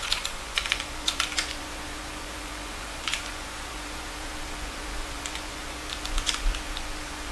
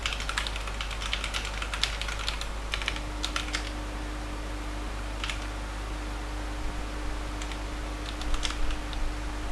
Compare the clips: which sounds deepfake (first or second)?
first